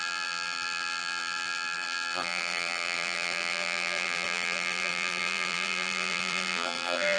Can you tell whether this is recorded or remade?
remade